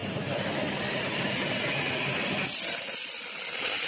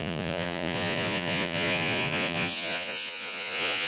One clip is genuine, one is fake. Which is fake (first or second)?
second